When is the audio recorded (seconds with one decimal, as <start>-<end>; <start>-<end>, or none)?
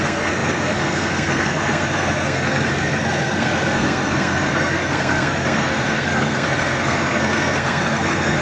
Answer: none